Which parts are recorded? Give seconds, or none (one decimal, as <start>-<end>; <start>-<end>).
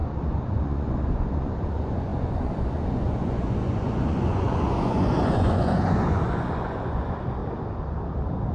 7.4-8.5